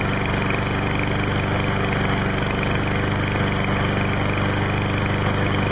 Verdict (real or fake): real